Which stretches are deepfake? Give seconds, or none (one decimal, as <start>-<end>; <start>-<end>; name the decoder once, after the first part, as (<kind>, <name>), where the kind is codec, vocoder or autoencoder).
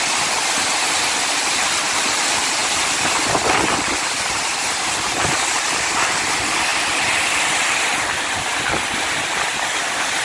none